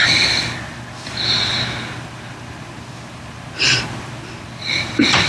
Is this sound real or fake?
real